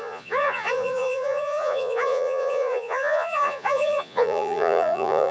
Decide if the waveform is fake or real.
fake